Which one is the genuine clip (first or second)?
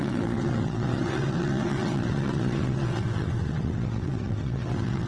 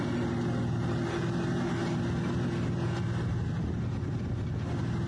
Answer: second